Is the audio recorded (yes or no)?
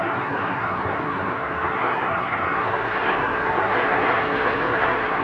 no